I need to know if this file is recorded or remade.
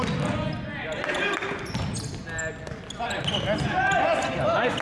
recorded